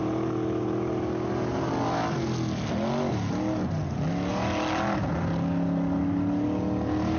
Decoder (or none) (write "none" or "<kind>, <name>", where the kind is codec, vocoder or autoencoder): none